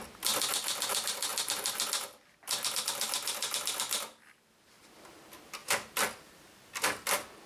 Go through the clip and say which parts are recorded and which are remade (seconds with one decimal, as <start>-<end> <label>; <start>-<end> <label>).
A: 0.0-5.6 recorded; 5.6-6.5 remade; 6.5-7.5 recorded